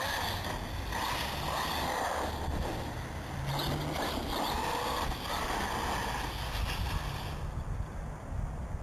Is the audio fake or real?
real